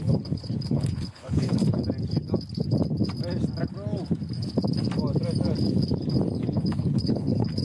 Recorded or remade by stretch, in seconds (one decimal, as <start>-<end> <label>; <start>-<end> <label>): 0.0-1.8 remade; 1.8-6.4 recorded; 6.4-7.6 remade